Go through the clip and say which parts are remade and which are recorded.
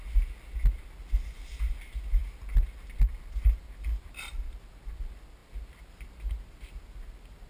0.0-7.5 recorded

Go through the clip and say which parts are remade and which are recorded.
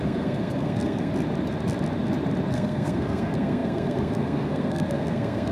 0.0-1.1 remade; 1.1-2.5 recorded; 2.5-5.5 remade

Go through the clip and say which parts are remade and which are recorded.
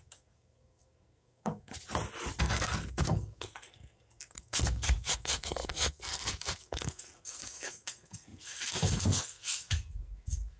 0.0-1.7 remade; 1.7-2.4 recorded; 2.4-10.6 remade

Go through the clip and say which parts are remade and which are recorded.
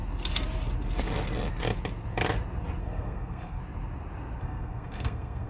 0.0-2.8 recorded; 2.8-3.6 remade; 3.6-4.4 recorded; 4.4-5.5 remade